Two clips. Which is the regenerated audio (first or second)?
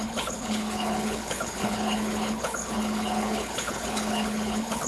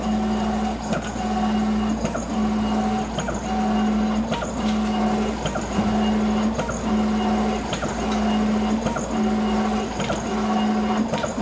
first